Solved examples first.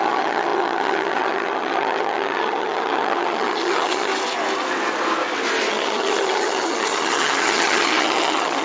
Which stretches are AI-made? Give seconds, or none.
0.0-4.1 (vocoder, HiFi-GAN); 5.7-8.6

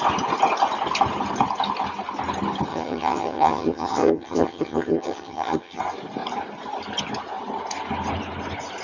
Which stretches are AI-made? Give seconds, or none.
2.7-5.8 (vocoder, HiFi-GAN)

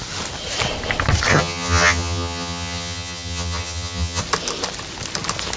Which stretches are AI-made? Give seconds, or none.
1.3-4.2 (vocoder, HiFi-GAN)